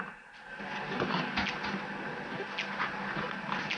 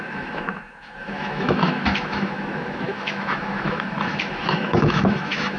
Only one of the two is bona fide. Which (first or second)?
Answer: first